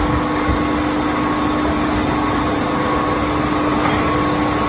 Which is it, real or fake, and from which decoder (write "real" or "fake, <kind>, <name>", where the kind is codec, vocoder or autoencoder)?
real